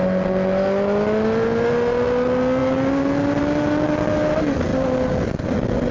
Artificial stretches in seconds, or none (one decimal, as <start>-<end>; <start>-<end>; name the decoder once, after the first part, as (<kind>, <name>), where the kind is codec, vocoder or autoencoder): none